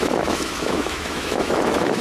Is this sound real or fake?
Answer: fake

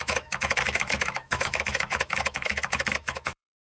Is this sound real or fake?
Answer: fake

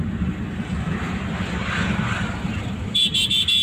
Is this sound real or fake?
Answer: real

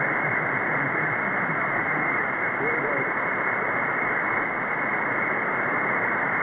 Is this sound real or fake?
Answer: real